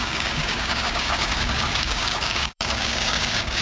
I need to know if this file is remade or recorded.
remade